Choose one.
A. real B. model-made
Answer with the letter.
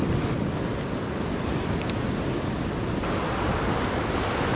A